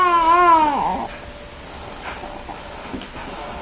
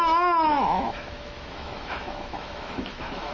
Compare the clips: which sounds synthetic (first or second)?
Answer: second